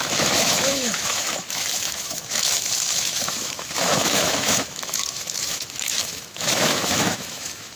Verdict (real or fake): fake